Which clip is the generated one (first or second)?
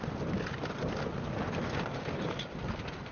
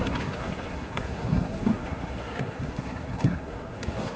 second